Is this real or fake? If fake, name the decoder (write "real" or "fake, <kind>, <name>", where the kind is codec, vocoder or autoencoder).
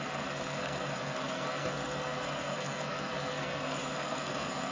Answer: fake, codec, SNAC